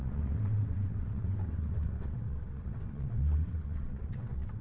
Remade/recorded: remade